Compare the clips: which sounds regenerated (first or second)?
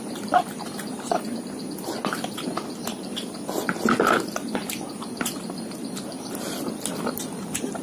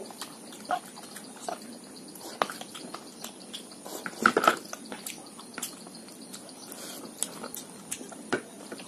first